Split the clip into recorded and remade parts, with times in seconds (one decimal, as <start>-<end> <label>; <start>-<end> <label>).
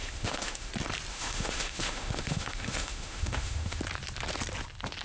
0.0-0.7 remade; 0.7-1.1 recorded; 1.1-3.8 remade; 3.8-5.0 recorded